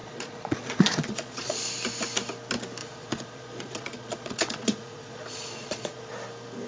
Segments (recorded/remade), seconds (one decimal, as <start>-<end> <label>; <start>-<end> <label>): 0.0-1.6 remade; 1.6-2.8 recorded; 2.8-6.1 remade; 6.1-6.7 recorded